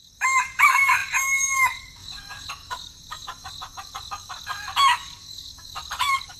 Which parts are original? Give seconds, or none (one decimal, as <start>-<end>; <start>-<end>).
none

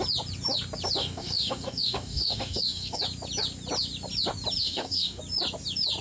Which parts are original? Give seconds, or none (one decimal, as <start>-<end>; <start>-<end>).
0.0-1.0; 3.0-4.6; 5.2-6.0

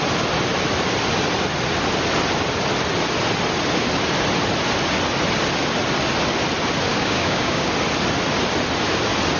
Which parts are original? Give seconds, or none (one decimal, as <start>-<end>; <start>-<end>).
0.0-6.9; 7.7-9.4